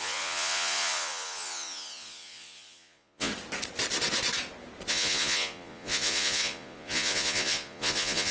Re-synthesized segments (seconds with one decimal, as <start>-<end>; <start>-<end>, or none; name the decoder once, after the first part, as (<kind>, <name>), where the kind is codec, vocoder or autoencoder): 0.0-3.3 (vocoder, Vocos); 4.9-8.3

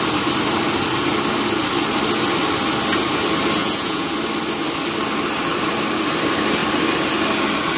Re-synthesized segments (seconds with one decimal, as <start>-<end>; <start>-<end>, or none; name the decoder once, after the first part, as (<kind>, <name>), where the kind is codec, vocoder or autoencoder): 3.6-4.1 (vocoder, Vocos)

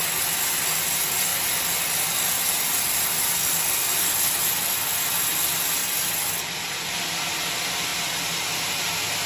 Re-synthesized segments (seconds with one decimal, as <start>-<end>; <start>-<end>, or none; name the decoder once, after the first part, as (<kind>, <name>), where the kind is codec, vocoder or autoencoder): none

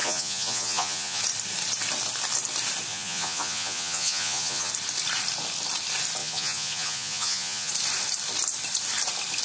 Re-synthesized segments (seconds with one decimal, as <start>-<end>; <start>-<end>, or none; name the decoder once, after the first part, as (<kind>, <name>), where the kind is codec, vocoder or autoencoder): 0.0-1.2 (vocoder, Vocos); 2.9-4.7; 6.2-7.7

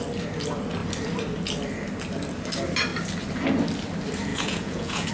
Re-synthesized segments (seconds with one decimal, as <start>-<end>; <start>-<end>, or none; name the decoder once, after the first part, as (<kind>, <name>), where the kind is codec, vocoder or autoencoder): 4.3-5.1 (vocoder, Vocos)

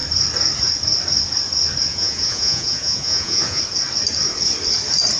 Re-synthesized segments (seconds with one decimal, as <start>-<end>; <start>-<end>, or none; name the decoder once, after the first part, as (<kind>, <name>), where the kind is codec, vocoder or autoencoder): 1.9-3.6 (vocoder, Vocos)